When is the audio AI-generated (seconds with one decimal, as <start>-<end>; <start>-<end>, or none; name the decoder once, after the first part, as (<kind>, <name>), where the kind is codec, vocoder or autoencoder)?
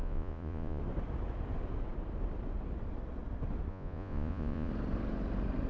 0.0-0.8 (vocoder, Vocos); 3.7-4.7